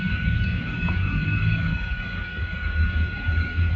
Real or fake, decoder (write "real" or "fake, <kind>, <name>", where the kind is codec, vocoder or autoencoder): fake, codec, DAC